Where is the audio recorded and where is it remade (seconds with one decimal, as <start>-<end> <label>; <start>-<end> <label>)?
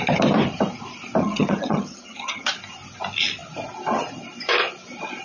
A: 0.0-1.2 recorded; 1.2-2.5 remade; 2.5-5.2 recorded